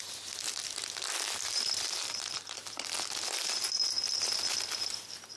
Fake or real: real